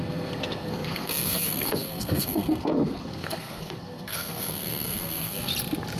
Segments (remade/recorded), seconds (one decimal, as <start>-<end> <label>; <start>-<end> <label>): 0.0-5.5 remade; 5.5-6.0 recorded